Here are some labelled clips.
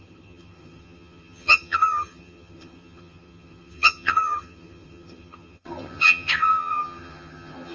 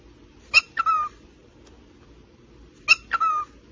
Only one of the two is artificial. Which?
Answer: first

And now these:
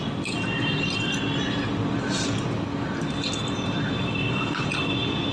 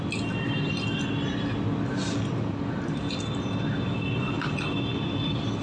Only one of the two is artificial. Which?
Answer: first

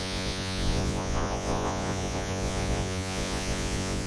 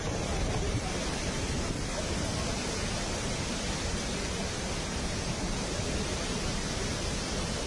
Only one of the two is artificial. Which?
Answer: first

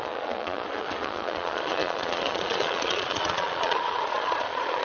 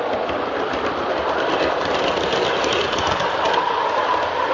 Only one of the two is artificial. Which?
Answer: first